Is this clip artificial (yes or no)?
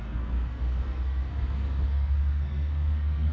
yes